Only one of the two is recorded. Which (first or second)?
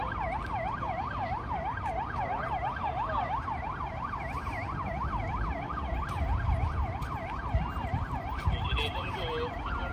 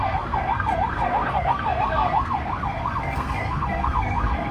first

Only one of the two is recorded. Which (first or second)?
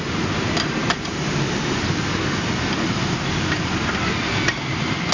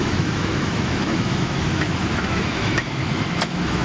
first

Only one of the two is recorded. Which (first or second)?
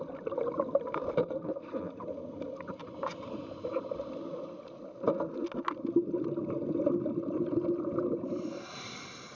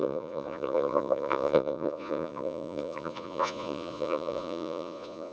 first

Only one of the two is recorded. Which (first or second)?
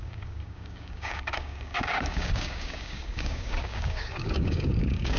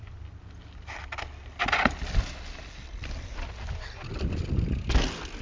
second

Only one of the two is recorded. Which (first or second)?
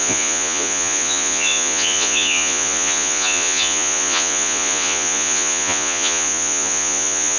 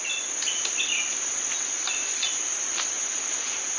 second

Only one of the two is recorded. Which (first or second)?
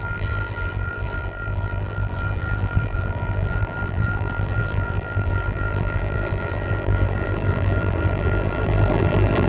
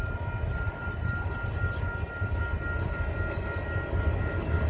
second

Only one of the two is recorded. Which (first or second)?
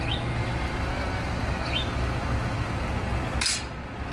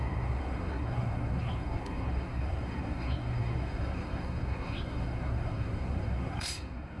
first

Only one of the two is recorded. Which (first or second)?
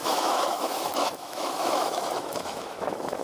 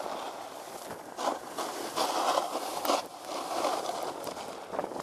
second